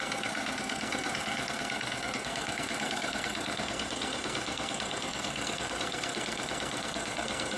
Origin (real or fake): fake